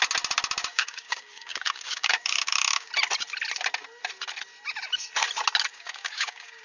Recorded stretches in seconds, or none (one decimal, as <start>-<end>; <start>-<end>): 0.0-0.7; 2.9-5.7